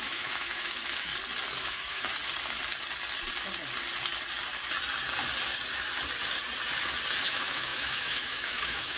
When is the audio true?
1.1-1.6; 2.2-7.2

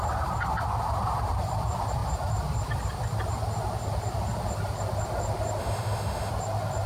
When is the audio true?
0.0-5.6; 6.3-6.9

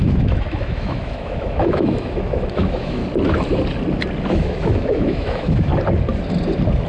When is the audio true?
3.0-4.3; 5.7-6.9

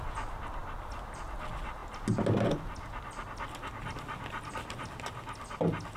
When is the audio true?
0.0-6.0

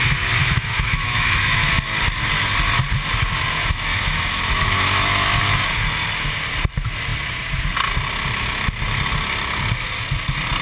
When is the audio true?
0.0-0.4; 1.7-3.9; 5.4-10.6

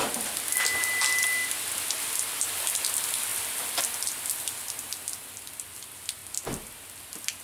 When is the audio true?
0.0-7.4